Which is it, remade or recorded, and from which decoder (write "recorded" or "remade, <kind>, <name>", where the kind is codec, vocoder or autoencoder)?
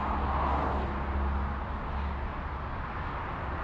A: recorded